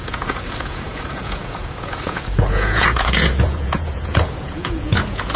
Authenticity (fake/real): fake